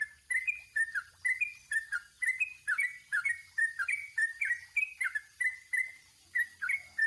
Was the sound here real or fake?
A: real